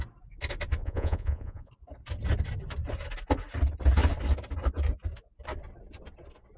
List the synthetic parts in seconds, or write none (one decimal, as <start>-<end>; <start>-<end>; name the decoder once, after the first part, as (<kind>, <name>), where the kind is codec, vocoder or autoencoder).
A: 0.8-1.7 (vocoder, Vocos)

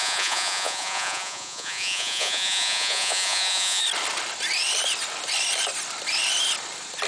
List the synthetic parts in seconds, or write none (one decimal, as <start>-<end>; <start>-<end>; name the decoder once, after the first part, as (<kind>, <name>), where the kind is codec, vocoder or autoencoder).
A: 0.0-3.8 (vocoder, Vocos)

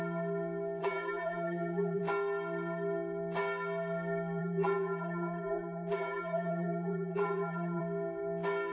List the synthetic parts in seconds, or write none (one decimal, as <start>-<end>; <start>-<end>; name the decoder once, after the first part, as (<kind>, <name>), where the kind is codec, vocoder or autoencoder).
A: 0.8-2.0 (vocoder, BigVGAN v2); 4.4-7.8

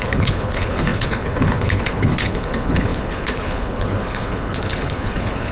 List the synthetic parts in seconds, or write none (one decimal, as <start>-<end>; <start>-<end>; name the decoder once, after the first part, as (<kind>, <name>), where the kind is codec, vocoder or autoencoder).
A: 0.0-5.5 (codec, HILCodec)

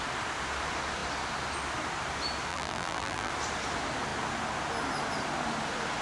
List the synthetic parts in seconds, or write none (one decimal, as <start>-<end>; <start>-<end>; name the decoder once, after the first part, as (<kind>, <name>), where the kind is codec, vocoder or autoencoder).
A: 2.5-3.3 (vocoder, BigVGAN v2)

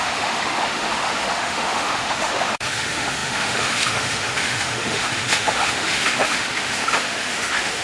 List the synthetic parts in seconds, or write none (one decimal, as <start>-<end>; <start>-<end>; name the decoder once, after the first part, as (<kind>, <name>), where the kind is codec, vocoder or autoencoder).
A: 0.0-7.8 (autoencoder, DAC-VAE)

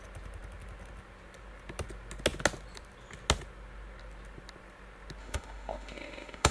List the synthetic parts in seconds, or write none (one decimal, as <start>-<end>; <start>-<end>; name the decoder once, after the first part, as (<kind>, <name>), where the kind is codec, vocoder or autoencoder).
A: 5.2-6.5 (autoencoder, DAC-VAE)